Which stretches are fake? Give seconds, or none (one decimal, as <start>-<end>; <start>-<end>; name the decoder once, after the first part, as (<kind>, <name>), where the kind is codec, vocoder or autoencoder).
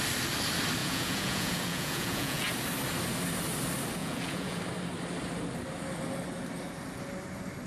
0.8-2.5 (vocoder, Vocos); 4.0-4.6